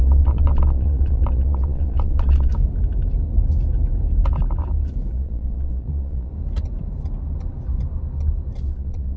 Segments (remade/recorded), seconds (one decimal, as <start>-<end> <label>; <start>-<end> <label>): 0.0-2.5 remade; 2.5-5.1 recorded; 5.1-6.3 remade; 6.3-8.7 recorded; 8.7-9.2 remade